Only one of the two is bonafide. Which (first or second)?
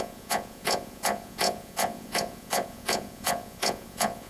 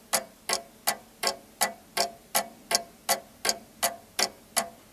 second